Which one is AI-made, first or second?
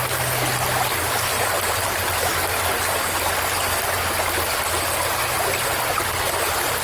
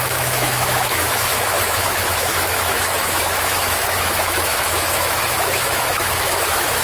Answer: second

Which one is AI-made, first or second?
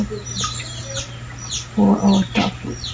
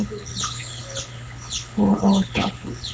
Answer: second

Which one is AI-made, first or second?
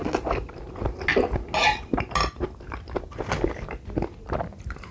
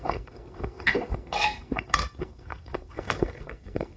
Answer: second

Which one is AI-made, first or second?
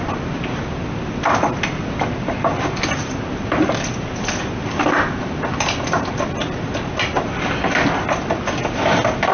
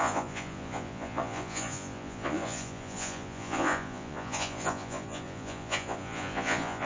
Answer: second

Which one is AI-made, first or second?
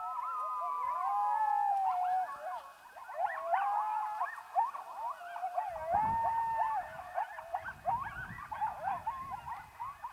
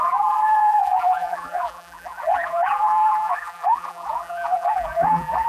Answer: second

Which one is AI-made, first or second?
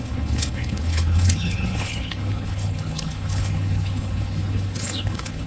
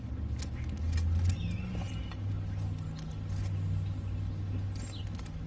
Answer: first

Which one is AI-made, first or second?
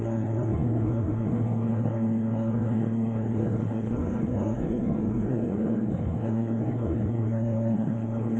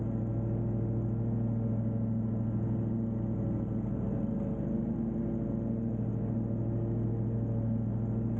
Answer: first